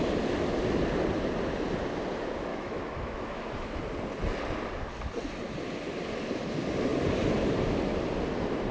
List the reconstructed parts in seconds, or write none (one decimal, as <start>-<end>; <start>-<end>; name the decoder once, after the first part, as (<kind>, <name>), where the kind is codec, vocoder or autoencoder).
2.5-3.8 (autoencoder, DAC-VAE)